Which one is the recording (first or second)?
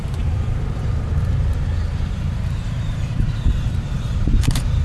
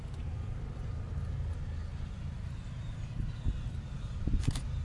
second